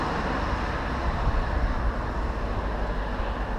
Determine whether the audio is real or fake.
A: real